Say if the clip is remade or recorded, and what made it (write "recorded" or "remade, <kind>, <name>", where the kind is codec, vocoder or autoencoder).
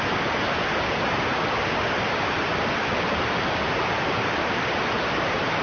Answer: recorded